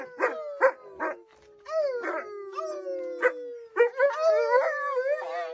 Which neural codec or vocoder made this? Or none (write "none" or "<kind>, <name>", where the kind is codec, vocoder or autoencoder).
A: none